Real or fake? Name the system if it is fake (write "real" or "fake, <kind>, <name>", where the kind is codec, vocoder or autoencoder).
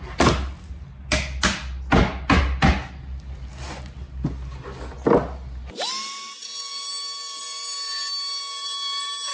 real